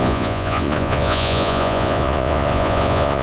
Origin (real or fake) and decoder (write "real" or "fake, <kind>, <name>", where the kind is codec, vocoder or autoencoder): fake, vocoder, Vocos